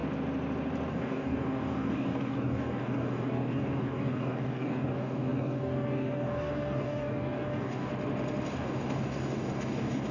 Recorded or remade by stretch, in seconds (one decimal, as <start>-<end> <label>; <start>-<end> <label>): 0.0-0.9 recorded; 0.9-7.9 remade; 7.9-8.5 recorded; 8.5-10.1 remade